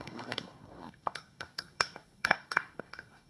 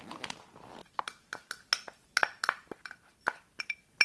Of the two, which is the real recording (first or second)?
second